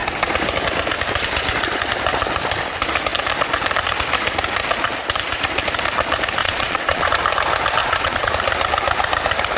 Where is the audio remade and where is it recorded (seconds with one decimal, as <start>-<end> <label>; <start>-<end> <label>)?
0.0-6.4 recorded; 6.4-7.1 remade; 7.1-7.8 recorded; 7.8-8.3 remade; 8.3-9.6 recorded